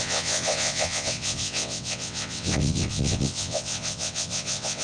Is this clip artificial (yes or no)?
yes